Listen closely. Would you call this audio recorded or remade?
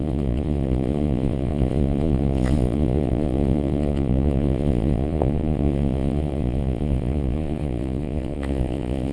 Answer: remade